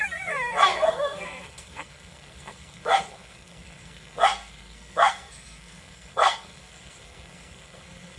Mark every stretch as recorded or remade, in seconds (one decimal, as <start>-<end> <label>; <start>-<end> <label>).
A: 0.0-8.2 remade